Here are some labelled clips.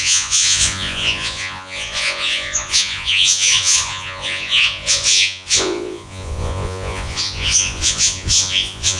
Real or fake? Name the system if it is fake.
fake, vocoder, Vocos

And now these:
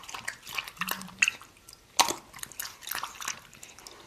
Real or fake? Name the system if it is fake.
real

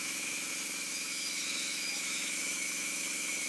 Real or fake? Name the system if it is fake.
fake, autoencoder, DAC-VAE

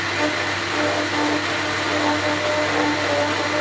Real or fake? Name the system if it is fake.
real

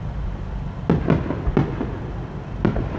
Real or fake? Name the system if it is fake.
real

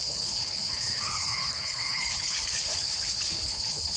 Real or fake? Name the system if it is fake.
fake, codec, HILCodec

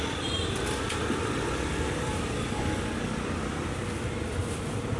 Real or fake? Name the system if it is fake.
real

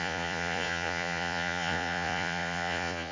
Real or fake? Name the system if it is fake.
fake, vocoder, Vocos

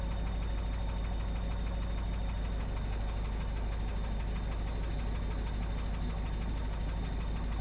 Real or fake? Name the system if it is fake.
real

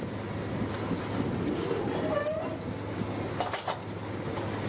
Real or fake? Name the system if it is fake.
real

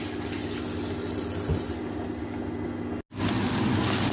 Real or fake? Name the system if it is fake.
real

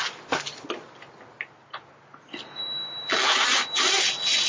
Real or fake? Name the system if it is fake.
real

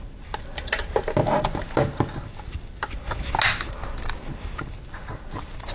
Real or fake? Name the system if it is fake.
real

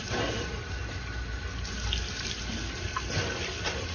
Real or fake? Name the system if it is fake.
real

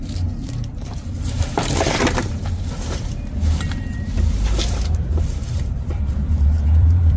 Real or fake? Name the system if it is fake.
fake, vocoder, BigVGAN v2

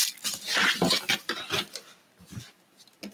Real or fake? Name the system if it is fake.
real